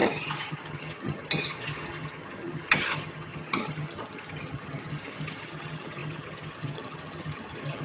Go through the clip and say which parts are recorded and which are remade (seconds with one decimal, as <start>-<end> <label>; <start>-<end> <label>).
0.0-7.8 remade